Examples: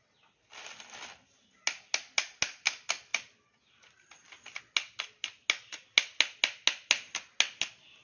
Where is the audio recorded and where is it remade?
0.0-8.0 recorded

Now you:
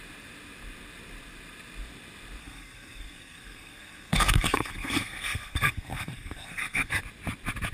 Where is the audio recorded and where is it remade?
0.0-2.4 recorded; 2.4-7.0 remade; 7.0-7.7 recorded

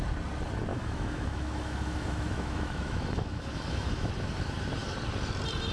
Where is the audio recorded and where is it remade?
0.0-0.7 recorded; 0.7-4.1 remade; 4.1-5.7 recorded

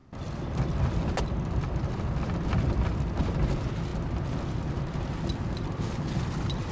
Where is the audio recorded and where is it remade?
0.0-6.7 recorded

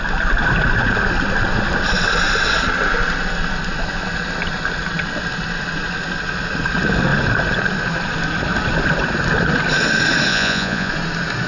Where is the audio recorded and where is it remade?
0.0-10.3 recorded; 10.3-10.9 remade; 10.9-11.5 recorded

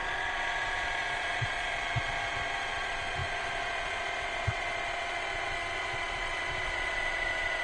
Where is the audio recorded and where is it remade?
0.0-7.6 remade

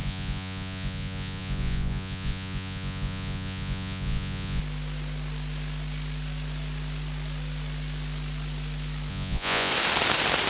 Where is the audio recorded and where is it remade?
0.0-4.6 remade; 4.6-9.1 recorded; 9.1-9.7 remade; 9.7-10.5 recorded

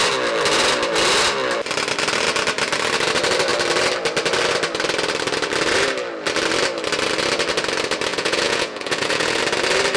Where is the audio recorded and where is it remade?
0.0-8.1 recorded; 8.1-9.4 remade; 9.4-10.0 recorded